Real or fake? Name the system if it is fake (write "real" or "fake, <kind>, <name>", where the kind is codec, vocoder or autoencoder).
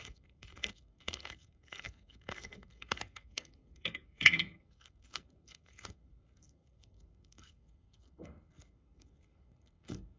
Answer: fake, codec, SNAC